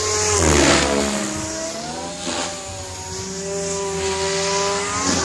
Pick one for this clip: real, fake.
real